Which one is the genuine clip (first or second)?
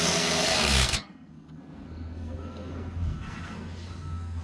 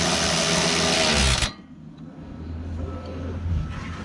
second